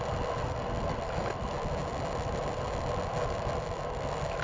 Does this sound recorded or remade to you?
recorded